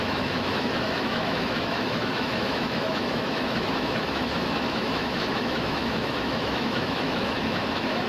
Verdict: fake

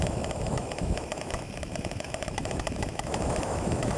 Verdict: fake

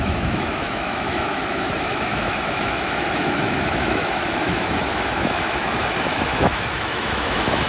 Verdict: fake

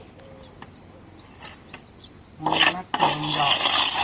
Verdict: real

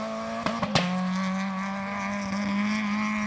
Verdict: real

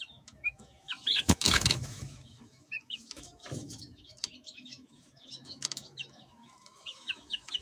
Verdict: fake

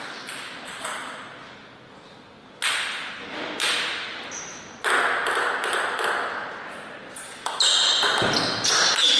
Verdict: real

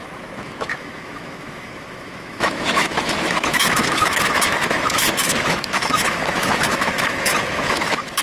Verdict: fake